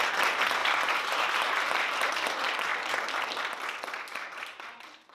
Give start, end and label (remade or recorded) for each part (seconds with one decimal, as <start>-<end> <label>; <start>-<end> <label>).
0.0-0.6 recorded; 0.6-2.1 remade; 2.1-5.1 recorded